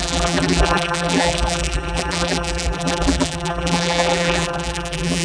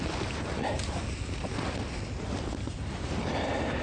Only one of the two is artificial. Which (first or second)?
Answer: first